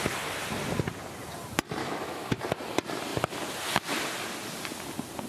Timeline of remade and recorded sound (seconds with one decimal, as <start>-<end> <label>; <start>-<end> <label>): 0.0-1.8 recorded; 1.8-2.4 remade; 2.4-5.3 recorded